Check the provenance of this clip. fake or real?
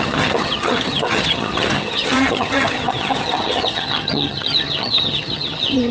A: fake